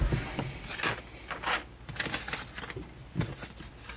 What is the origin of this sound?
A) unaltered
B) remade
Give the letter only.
A